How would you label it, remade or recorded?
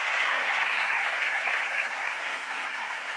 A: remade